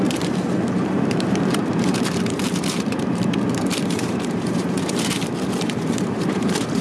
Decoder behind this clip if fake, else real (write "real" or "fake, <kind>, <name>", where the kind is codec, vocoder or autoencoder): fake, vocoder, BigVGAN v2